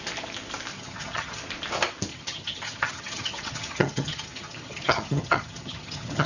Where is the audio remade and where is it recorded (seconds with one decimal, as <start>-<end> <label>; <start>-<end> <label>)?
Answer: 0.0-0.7 recorded; 0.7-1.4 remade; 1.4-2.1 recorded; 2.1-6.3 remade

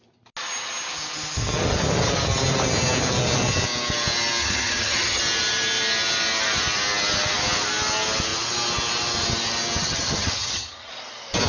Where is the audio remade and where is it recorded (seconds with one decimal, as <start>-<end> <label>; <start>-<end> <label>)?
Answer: 0.0-4.4 recorded; 4.4-5.2 remade; 5.2-9.8 recorded; 9.8-10.9 remade; 10.9-11.5 recorded